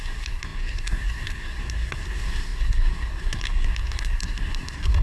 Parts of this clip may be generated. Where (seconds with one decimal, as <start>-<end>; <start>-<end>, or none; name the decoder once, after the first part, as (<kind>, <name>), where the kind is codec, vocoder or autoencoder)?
0.0-5.0 (codec, SNAC)